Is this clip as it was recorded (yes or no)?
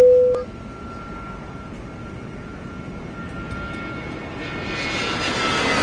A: yes